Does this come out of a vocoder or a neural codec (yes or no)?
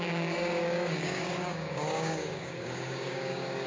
yes